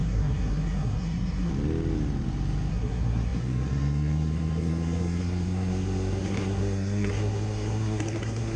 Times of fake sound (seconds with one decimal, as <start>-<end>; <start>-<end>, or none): 0.0-1.5; 2.7-8.6